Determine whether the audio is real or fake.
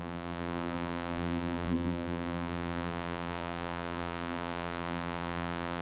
fake